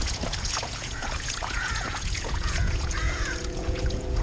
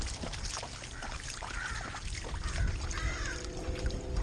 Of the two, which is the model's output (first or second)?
first